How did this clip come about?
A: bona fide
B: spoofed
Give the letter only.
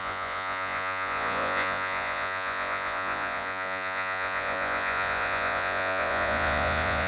B